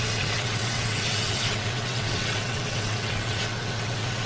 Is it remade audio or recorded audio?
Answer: remade